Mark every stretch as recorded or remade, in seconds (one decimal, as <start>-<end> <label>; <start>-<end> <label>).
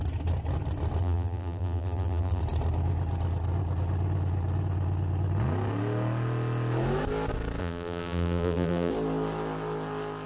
0.0-1.0 recorded; 1.0-2.4 remade; 2.4-7.6 recorded; 7.6-8.9 remade; 8.9-10.3 recorded